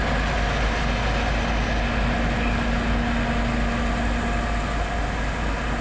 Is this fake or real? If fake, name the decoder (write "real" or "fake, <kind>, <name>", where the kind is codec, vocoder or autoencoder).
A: real